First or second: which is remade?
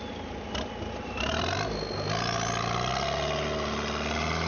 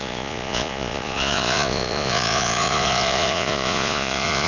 second